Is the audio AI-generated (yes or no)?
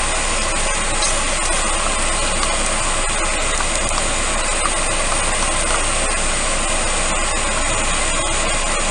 no